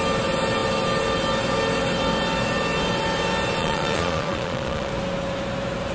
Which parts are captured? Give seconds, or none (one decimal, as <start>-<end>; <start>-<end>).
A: 0.0-3.6; 4.9-5.9